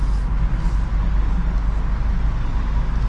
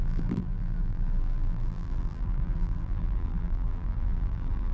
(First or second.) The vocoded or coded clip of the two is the second